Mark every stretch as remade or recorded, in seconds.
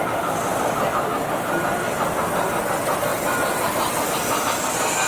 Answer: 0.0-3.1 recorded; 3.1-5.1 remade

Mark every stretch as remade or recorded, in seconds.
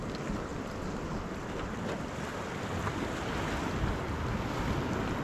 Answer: 0.0-5.2 recorded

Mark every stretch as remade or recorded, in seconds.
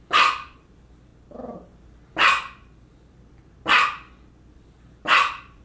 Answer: 0.0-1.1 remade; 1.1-4.5 recorded; 4.5-5.6 remade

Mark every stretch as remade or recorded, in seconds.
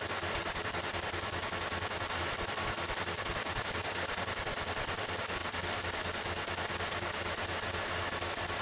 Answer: 0.0-0.9 remade; 0.9-2.2 recorded; 2.2-5.4 remade; 5.4-8.6 recorded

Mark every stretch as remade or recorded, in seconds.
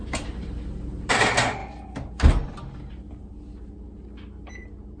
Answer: 0.0-1.1 remade; 1.1-5.0 recorded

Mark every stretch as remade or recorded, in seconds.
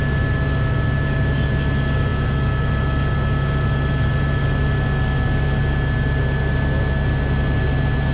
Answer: 0.0-8.1 recorded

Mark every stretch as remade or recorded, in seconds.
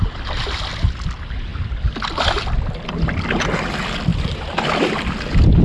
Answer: 0.0-4.1 recorded; 4.1-4.6 remade; 4.6-5.6 recorded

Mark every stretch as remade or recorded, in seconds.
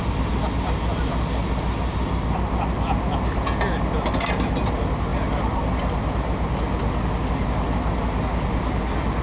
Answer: 0.0-9.2 recorded